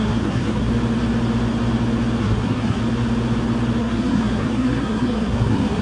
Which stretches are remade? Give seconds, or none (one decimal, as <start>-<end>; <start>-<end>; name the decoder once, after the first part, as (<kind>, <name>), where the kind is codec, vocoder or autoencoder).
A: 0.0-0.7 (codec, SNAC); 2.2-2.8; 3.8-5.8